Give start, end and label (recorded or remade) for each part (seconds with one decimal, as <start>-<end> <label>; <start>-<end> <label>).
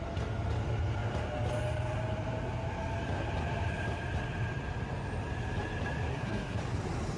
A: 0.0-6.1 recorded; 6.1-6.6 remade; 6.6-7.2 recorded